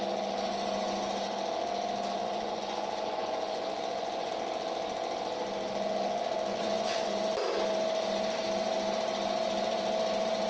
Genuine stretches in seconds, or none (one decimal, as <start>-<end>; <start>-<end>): 0.0-2.2; 4.3-6.5; 7.1-10.5